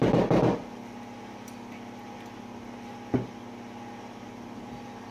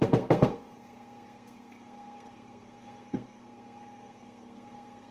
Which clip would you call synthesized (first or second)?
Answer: second